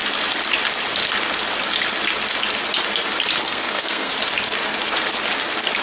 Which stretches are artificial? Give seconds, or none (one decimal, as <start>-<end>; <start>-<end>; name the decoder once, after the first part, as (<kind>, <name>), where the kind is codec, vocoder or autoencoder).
3.4-4.1 (codec, SNAC)